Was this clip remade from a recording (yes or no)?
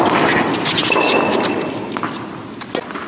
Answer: no